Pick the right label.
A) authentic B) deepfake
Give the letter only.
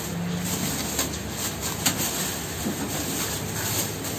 A